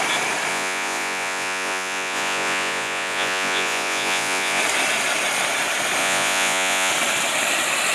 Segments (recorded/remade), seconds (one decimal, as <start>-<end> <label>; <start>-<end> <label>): 0.0-0.5 recorded; 0.5-4.6 remade; 4.6-6.0 recorded; 6.0-6.9 remade; 6.9-7.9 recorded